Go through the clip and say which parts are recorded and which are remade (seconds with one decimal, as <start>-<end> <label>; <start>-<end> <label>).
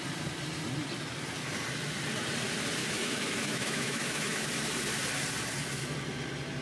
0.0-2.8 recorded; 2.8-4.5 remade; 4.5-6.6 recorded